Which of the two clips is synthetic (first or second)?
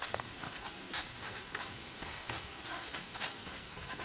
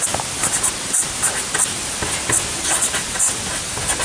first